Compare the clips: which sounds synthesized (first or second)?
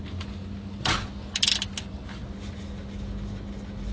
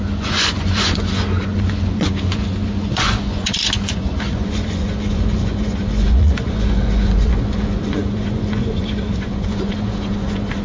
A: second